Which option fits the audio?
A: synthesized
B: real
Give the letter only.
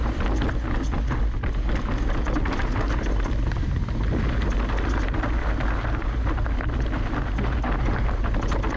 B